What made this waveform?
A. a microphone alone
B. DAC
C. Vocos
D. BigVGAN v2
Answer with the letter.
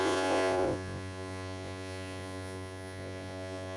C